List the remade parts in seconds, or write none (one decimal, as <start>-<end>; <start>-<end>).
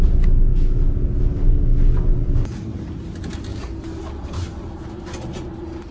none